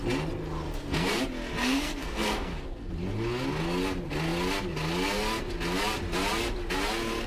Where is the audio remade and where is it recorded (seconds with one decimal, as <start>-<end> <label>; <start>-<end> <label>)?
0.0-0.7 recorded; 0.7-1.2 remade; 1.2-1.6 recorded; 1.6-2.9 remade; 2.9-7.3 recorded